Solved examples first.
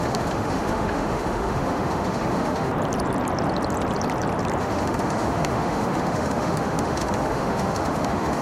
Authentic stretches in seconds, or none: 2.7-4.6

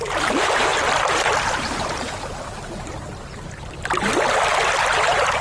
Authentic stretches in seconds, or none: 0.0-5.4

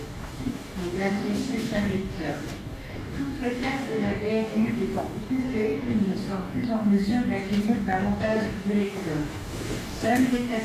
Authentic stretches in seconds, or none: none

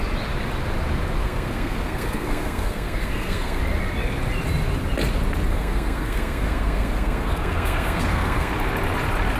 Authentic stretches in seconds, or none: 0.0-1.2; 3.6-5.5; 8.5-9.4

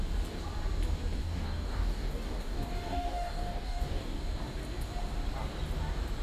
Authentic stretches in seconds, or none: 0.0-1.2; 4.2-6.2

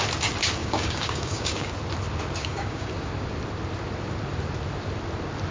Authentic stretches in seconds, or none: 0.0-0.6; 1.7-2.4; 2.9-5.5